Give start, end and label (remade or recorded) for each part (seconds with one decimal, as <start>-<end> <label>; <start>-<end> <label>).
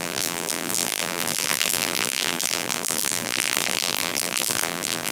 0.0-5.1 remade